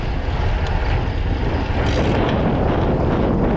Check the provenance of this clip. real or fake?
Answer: real